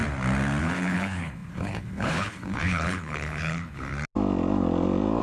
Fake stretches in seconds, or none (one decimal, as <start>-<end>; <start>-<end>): 0.6-3.9